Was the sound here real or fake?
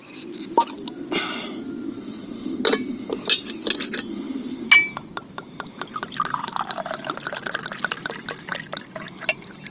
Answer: real